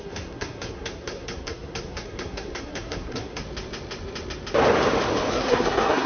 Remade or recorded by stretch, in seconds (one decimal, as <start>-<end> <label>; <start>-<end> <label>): 0.0-3.4 remade; 3.4-5.3 recorded; 5.3-6.1 remade